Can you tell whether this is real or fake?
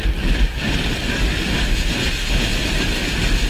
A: real